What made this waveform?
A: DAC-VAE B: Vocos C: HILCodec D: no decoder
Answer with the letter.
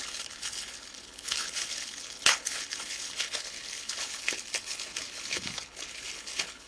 C